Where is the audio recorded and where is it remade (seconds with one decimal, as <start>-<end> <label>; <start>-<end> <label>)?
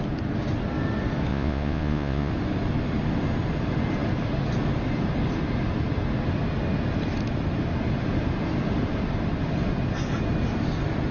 0.0-1.3 recorded; 1.3-2.3 remade; 2.3-11.1 recorded